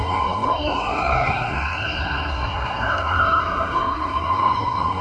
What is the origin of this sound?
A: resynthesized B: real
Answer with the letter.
A